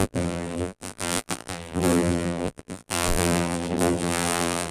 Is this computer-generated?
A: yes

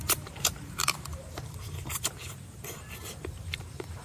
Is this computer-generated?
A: yes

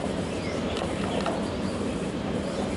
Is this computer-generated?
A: yes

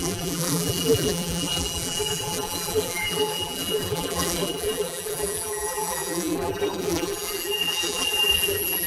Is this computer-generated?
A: yes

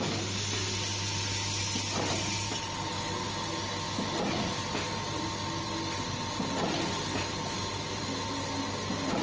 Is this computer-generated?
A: no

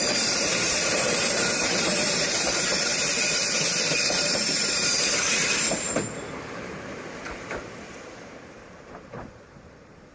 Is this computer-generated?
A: yes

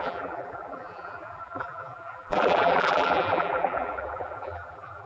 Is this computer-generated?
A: yes